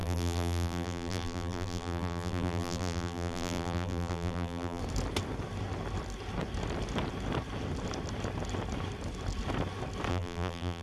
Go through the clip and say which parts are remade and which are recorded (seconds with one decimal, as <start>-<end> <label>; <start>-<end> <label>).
0.0-4.8 remade; 4.8-10.1 recorded; 10.1-10.8 remade